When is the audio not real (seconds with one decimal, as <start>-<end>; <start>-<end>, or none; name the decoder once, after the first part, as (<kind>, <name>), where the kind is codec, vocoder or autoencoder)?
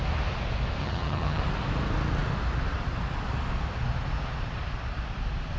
0.8-1.4 (vocoder, HiFi-GAN)